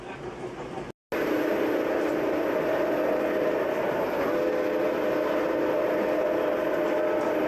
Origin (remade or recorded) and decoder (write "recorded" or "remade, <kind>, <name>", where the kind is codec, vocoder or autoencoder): recorded